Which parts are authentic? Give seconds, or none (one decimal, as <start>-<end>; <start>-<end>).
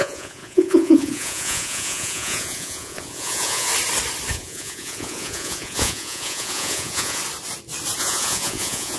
3.7-4.3; 7.2-8.0